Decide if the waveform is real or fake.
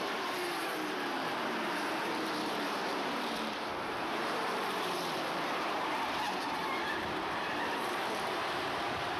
fake